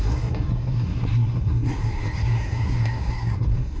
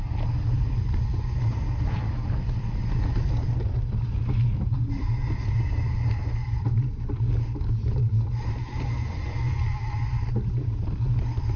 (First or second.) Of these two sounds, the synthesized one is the first